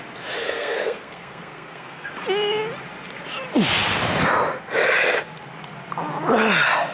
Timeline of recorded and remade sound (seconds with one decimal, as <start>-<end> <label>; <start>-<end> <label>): 0.0-0.4 recorded; 0.4-2.1 remade; 2.1-6.9 recorded